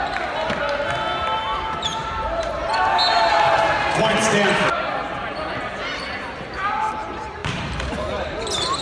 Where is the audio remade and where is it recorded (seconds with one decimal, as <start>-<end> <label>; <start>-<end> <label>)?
0.0-2.0 recorded; 2.0-2.7 remade; 2.7-7.4 recorded; 7.4-8.4 remade; 8.4-8.8 recorded